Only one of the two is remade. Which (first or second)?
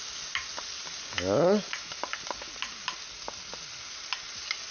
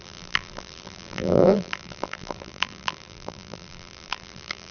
second